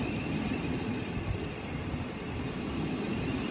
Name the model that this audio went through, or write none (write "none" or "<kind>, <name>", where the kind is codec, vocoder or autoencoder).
none